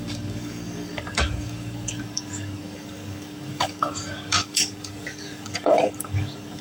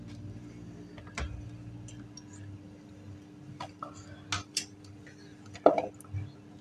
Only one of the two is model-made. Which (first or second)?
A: first